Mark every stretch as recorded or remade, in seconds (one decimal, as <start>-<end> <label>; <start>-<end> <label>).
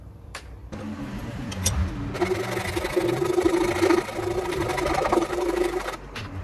0.0-0.6 remade; 0.6-4.4 recorded; 4.4-6.4 remade